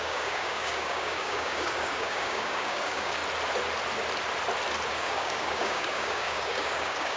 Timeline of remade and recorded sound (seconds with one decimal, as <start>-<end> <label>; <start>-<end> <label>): 0.0-3.2 remade; 3.2-4.9 recorded; 4.9-7.2 remade